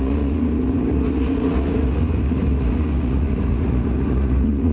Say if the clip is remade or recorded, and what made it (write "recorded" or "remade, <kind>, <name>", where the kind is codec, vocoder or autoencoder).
remade, vocoder, Vocos